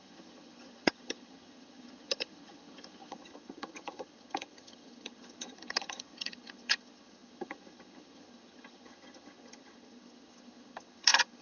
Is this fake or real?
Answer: fake